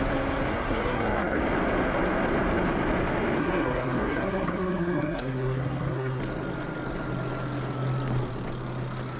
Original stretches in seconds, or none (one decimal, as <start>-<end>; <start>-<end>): 0.0-0.5; 1.4-3.4; 6.2-9.2